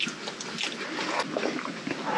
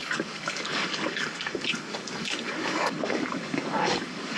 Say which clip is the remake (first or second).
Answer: second